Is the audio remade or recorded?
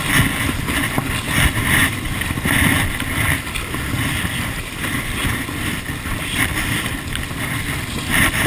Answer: recorded